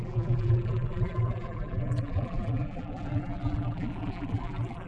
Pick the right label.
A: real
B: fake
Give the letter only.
B